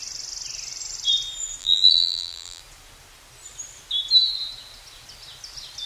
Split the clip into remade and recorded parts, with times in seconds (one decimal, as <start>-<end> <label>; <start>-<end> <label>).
0.0-1.6 recorded; 1.6-2.6 remade; 2.6-5.9 recorded